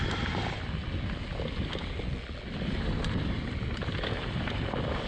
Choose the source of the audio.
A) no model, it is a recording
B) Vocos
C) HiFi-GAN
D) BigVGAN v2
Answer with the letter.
A